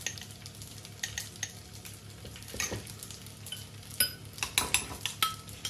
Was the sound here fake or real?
real